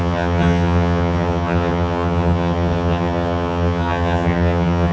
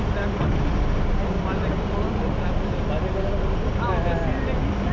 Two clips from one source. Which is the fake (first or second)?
first